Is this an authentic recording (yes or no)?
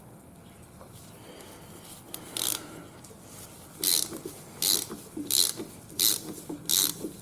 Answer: yes